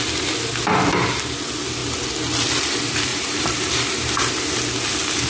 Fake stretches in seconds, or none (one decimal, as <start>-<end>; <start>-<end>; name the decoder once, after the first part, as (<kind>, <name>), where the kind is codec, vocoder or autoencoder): 3.1-4.3 (vocoder, BigVGAN v2)